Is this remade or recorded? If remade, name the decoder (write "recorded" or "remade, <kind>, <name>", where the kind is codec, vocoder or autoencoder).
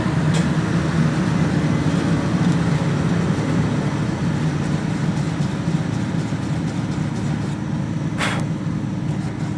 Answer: recorded